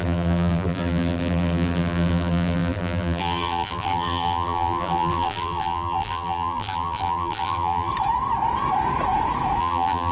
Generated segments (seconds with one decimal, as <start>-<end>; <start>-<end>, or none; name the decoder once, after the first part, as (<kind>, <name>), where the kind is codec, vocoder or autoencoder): 0.0-7.9 (vocoder, BigVGAN v2); 9.6-10.1